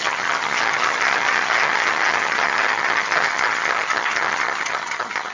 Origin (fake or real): fake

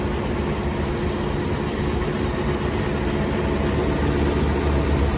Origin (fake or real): real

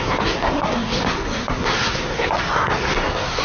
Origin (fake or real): fake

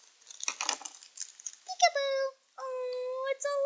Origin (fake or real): real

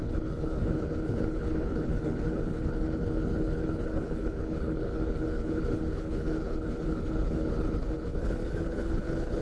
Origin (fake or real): fake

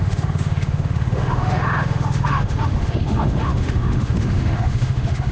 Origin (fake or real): fake